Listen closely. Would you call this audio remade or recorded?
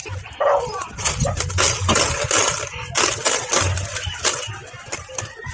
recorded